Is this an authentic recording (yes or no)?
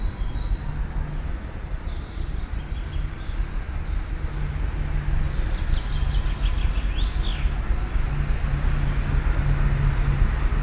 yes